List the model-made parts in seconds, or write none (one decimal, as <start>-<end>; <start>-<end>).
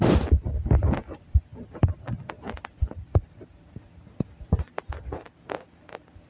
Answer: none